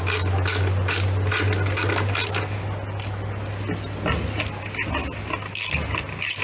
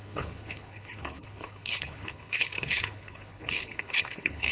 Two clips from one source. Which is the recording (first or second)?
first